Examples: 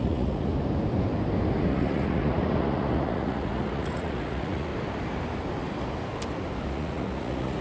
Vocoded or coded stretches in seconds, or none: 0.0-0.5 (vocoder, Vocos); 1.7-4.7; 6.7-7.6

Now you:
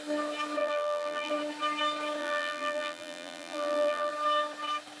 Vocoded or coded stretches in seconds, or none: 0.6-1.3 (vocoder, BigVGAN v2); 2.2-4.1

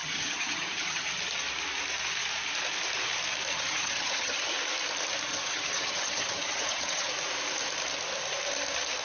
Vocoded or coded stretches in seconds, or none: 0.0-1.2 (vocoder, HiFi-GAN); 3.5-4.5; 5.3-7.1

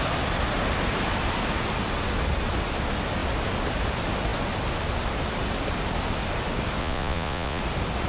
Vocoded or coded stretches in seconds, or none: 6.8-7.6 (vocoder, Vocos)